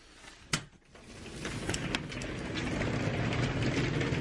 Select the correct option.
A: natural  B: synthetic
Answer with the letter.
A